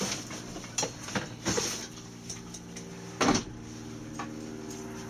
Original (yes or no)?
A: yes